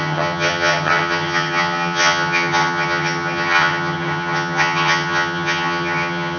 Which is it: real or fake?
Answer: fake